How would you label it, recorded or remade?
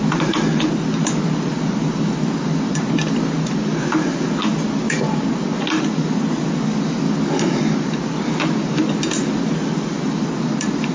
recorded